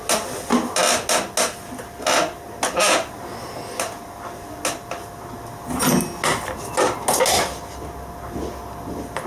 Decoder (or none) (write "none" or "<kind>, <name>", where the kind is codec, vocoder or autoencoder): none